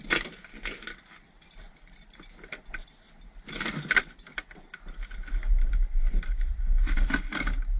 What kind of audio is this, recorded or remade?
recorded